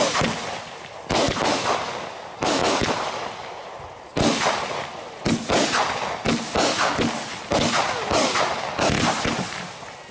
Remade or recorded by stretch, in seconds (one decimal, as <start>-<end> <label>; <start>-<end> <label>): 0.0-10.1 recorded